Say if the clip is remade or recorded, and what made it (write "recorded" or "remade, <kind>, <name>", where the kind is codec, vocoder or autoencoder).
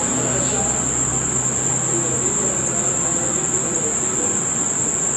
recorded